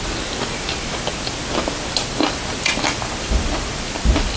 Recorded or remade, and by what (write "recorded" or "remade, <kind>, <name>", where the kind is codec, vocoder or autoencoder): recorded